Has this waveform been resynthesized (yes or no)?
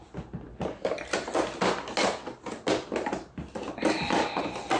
no